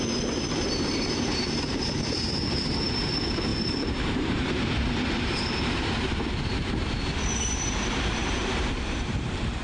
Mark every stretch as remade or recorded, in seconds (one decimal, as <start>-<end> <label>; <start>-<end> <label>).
0.0-9.6 remade